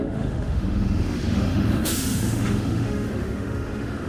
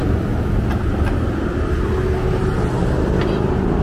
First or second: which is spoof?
first